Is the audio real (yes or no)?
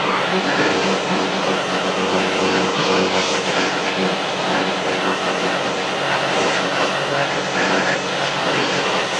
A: no